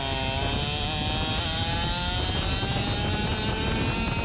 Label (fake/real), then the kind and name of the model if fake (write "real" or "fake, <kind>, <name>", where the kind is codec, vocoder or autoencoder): real